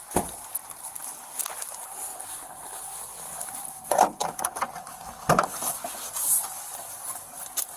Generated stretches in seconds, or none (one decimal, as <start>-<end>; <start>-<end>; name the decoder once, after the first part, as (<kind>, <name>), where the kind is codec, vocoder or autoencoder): none